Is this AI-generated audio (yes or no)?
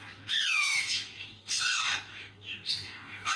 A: yes